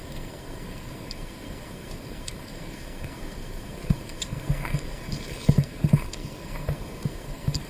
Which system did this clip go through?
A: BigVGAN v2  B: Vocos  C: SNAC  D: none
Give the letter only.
C